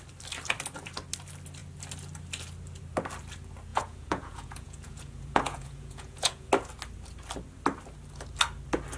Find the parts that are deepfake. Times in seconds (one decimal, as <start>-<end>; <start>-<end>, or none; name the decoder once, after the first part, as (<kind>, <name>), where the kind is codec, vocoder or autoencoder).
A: 3.7-6.5 (vocoder, Vocos)